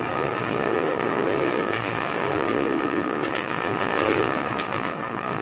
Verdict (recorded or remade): remade